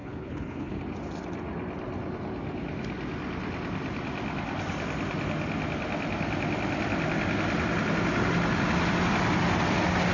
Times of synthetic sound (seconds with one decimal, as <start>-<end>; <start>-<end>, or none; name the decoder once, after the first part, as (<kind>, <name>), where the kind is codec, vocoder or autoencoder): 0.0-0.8 (codec, HILCodec)